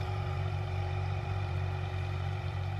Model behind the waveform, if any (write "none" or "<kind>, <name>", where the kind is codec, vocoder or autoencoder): vocoder, BigVGAN v2